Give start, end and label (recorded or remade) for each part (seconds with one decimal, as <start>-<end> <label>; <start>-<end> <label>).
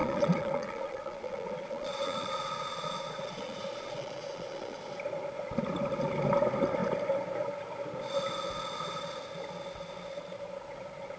0.0-4.8 remade; 4.8-11.2 recorded